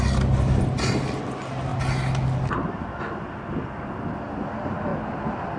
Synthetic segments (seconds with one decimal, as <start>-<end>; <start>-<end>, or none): none